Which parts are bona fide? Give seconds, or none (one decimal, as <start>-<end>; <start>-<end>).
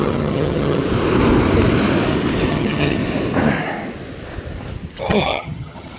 0.8-2.5; 3.0-5.0